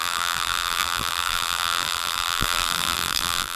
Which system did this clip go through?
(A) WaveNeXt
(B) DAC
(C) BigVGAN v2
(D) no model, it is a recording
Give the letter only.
C